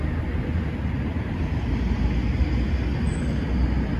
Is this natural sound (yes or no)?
yes